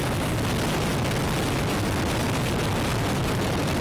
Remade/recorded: recorded